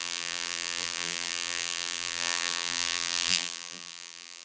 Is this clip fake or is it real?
fake